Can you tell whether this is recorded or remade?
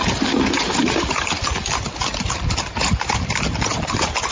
recorded